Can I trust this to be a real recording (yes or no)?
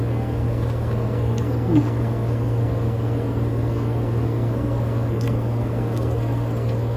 no